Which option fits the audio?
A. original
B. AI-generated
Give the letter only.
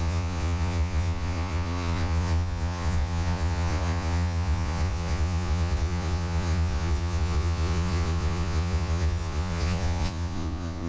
B